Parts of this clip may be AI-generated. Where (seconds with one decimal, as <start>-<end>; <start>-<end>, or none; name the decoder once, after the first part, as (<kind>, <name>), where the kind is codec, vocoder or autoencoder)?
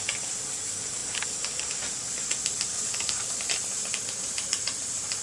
2.7-3.4 (codec, DAC)